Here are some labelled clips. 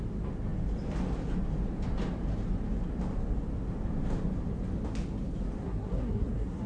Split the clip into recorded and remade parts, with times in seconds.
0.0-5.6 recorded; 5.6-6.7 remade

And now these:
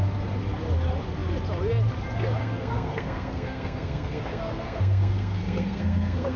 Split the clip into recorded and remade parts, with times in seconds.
0.0-2.4 recorded; 2.4-6.4 remade

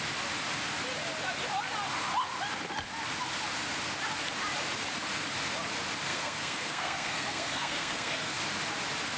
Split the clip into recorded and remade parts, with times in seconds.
0.0-6.1 recorded; 6.1-8.4 remade; 8.4-9.2 recorded

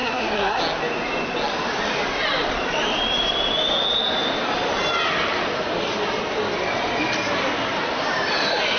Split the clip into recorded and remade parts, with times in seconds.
0.0-0.6 remade; 0.6-8.8 recorded

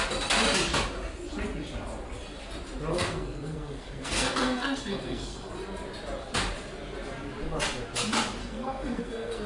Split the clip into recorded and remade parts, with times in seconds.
0.0-2.9 recorded; 2.9-5.5 remade; 5.5-8.4 recorded; 8.4-9.5 remade